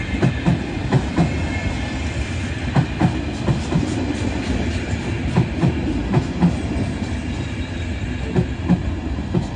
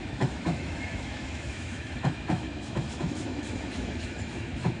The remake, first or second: second